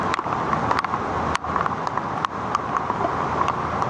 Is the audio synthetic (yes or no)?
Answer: no